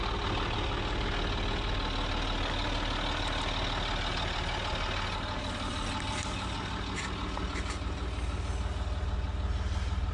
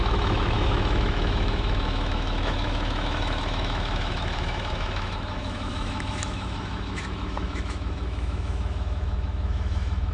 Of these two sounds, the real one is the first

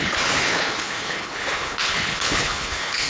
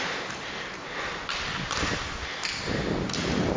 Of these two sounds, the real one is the second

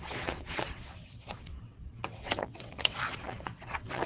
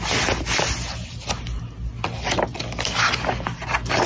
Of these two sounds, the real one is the second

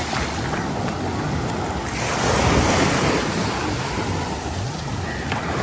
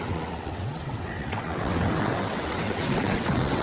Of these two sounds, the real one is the first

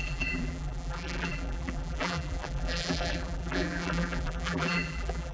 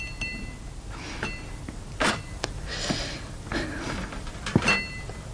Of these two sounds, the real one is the second